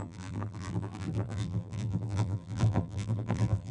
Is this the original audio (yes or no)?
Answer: no